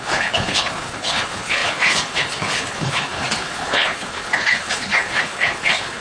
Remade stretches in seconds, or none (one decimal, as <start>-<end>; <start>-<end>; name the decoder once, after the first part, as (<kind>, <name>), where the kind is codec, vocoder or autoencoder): 0.0-6.0 (codec, HILCodec)